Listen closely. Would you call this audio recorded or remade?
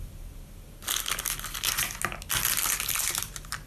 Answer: recorded